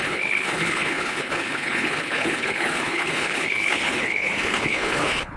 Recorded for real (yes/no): no